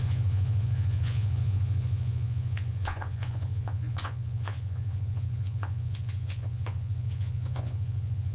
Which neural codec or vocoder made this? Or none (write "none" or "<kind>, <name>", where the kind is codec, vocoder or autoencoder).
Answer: vocoder, Vocos